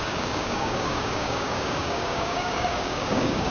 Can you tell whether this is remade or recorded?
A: remade